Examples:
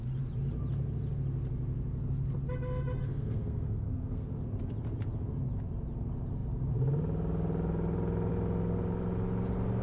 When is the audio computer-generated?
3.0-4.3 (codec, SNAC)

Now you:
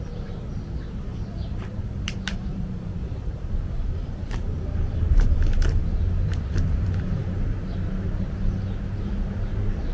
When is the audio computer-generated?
1.1-2.6 (vocoder, BigVGAN v2); 3.0-7.4

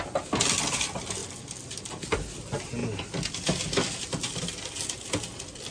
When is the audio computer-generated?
none

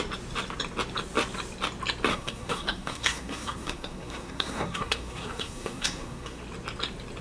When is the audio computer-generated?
2.1-6.4 (codec, SNAC)

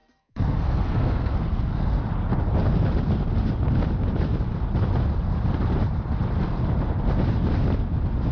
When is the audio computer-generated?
0.0-2.0 (codec, SNAC)

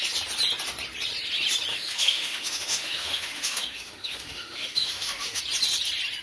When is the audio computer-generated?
1.7-5.4 (autoencoder, DAC-VAE)